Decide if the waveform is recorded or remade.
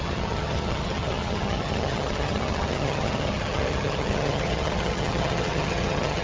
remade